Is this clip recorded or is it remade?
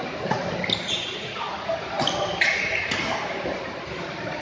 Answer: recorded